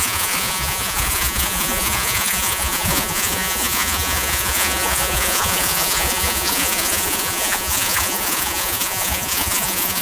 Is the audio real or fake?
fake